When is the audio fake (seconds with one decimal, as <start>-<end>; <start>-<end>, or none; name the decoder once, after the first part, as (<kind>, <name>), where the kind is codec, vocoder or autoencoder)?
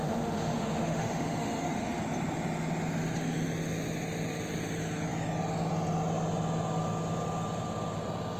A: 0.0-2.0 (autoencoder, DAC-VAE)